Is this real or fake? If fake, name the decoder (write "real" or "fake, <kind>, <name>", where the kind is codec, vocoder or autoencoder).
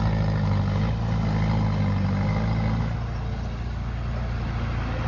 real